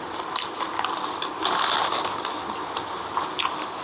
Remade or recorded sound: recorded